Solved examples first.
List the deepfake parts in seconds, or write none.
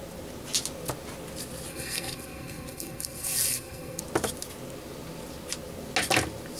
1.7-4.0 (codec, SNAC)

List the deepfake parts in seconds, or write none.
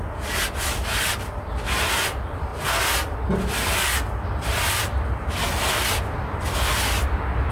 0.0-7.5 (vocoder, BigVGAN v2)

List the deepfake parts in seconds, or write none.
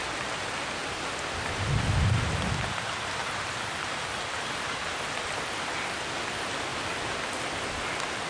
0.8-2.0 (vocoder, BigVGAN v2); 6.7-8.3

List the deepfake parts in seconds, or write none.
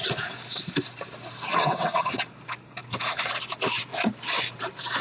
1.5-2.1 (vocoder, WaveNeXt)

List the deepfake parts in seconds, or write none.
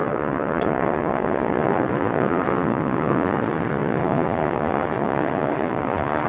0.0-6.3 (vocoder, Vocos)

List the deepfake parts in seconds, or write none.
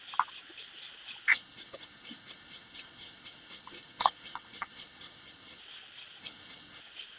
1.3-5.6 (codec, HILCodec); 6.2-6.8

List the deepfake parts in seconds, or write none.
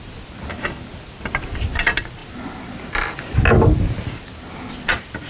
none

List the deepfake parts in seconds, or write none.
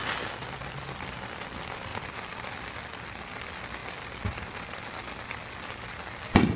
none